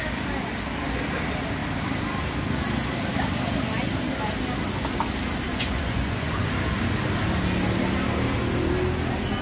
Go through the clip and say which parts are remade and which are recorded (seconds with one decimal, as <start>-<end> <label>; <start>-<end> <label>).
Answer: 0.0-5.5 recorded; 5.5-6.5 remade; 6.5-9.4 recorded